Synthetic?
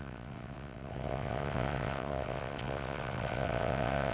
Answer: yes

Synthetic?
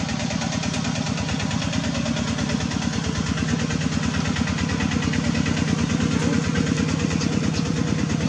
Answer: no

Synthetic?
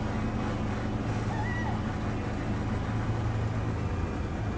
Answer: no